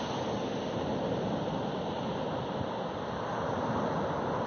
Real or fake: real